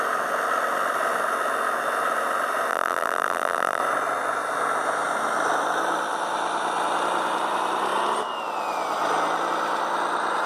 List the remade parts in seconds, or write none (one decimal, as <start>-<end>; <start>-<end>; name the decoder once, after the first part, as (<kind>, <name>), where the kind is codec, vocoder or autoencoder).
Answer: 2.7-3.8 (vocoder, BigVGAN v2)